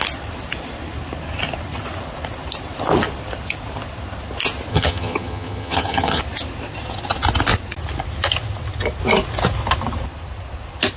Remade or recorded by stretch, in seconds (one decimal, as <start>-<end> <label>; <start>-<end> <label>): 0.0-4.7 recorded; 4.7-6.2 remade; 6.2-11.0 recorded